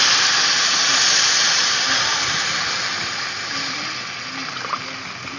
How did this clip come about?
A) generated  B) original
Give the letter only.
B